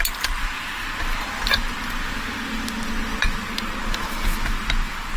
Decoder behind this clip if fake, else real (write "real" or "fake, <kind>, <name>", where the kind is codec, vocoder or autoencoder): real